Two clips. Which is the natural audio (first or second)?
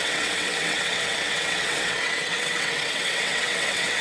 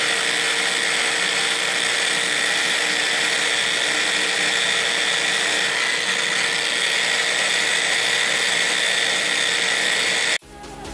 second